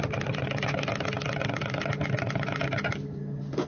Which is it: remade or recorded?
recorded